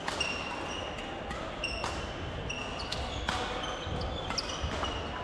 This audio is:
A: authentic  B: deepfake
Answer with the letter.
A